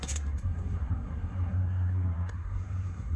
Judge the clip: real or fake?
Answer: fake